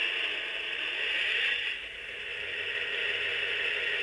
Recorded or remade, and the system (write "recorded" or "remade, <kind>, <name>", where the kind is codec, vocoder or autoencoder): recorded